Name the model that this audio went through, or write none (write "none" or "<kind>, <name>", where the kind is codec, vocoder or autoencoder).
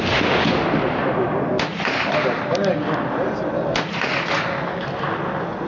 none